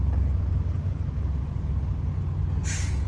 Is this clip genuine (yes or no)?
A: yes